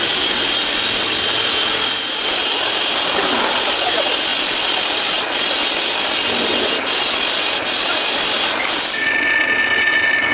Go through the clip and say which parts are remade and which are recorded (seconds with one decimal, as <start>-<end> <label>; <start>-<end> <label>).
0.0-4.3 recorded; 4.3-5.5 remade; 5.5-10.3 recorded